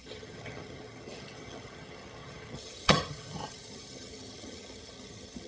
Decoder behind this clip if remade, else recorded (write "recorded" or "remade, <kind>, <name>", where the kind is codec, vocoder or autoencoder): remade, vocoder, HiFi-GAN